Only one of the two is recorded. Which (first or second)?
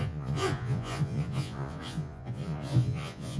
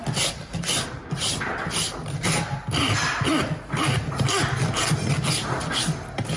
second